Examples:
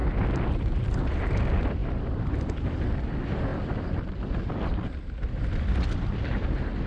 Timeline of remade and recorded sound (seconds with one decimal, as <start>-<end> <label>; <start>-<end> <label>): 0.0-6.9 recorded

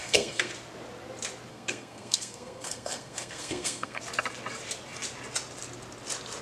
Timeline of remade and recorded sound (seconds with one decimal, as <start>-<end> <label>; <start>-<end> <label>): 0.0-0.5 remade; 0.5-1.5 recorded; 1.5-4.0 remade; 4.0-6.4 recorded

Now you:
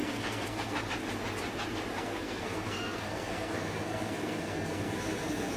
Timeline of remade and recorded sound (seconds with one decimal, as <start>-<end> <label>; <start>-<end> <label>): 0.0-0.9 remade; 0.9-1.9 recorded; 1.9-5.6 remade

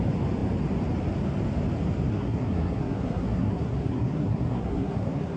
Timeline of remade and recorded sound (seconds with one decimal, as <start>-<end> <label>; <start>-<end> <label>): 0.0-2.1 recorded; 2.1-5.4 remade

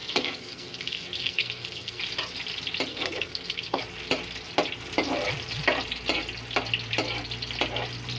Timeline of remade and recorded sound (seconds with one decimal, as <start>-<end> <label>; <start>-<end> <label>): 0.0-2.0 remade; 2.0-2.9 recorded; 2.9-3.8 remade; 3.8-8.2 recorded